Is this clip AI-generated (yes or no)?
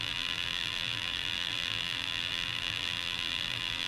yes